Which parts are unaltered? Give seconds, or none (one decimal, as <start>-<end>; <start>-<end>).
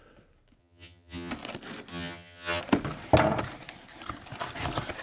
0.0-0.6; 1.3-1.9; 2.6-5.0